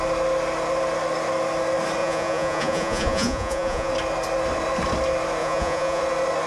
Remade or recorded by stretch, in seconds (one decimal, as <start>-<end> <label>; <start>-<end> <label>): 0.0-2.0 recorded; 2.0-3.9 remade; 3.9-5.4 recorded; 5.4-6.0 remade; 6.0-6.5 recorded